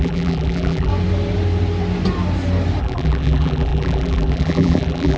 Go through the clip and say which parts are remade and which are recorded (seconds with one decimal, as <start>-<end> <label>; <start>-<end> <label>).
0.0-0.9 remade; 0.9-2.8 recorded; 2.8-5.2 remade